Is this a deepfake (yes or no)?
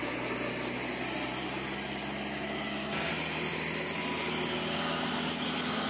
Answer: no